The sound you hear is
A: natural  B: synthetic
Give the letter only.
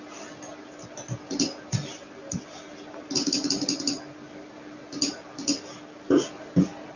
A